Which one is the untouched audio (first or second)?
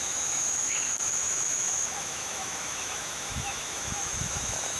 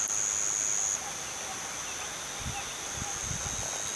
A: second